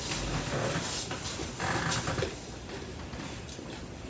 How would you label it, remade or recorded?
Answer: recorded